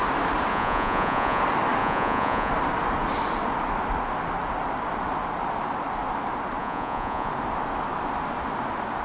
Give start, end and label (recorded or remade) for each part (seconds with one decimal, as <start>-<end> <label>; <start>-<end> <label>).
0.0-0.5 recorded; 0.5-1.4 remade; 1.4-1.8 recorded; 1.8-2.5 remade; 2.5-6.6 recorded; 6.6-7.3 remade; 7.3-9.0 recorded